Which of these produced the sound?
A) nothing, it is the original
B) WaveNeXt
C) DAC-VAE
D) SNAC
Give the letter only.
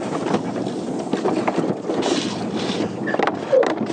A